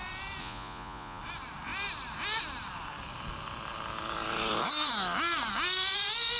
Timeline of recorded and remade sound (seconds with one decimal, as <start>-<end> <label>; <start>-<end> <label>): 0.0-0.4 recorded; 0.4-1.2 remade; 1.2-6.4 recorded